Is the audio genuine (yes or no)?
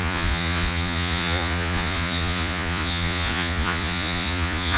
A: no